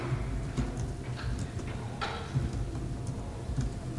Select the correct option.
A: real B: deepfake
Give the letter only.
A